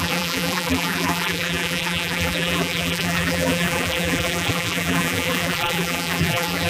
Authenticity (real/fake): fake